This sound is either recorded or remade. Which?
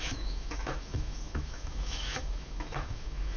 remade